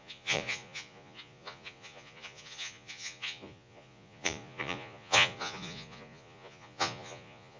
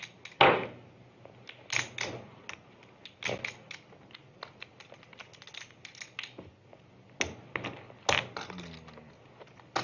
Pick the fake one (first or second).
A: first